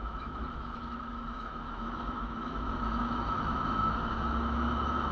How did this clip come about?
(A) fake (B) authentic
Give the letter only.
A